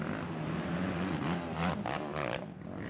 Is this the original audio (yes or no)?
yes